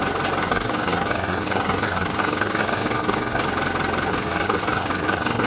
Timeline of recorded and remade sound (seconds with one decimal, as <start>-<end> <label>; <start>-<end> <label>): 0.0-0.4 recorded; 0.4-3.4 remade; 3.4-4.1 recorded; 4.1-5.5 remade